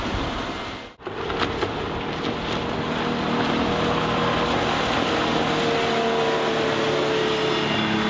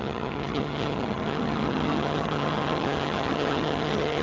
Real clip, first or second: first